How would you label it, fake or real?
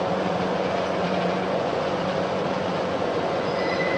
fake